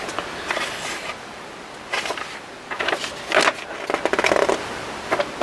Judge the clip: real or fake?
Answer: real